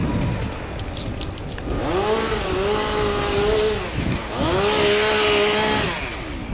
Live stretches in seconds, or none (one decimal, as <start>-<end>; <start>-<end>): 0.0-6.5